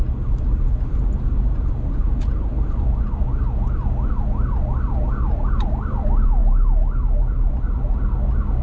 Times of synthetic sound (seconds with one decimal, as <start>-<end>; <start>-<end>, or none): none